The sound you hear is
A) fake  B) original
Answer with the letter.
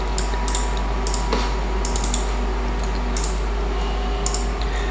B